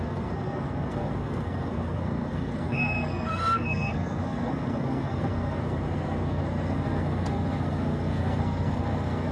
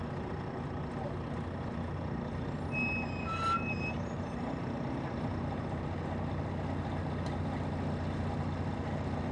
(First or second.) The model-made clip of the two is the first